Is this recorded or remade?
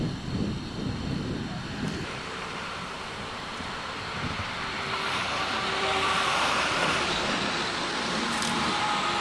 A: remade